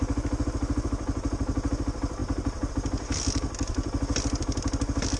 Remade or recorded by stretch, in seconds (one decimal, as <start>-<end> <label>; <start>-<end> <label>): 0.0-5.2 recorded